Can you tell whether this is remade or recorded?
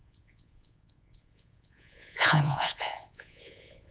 remade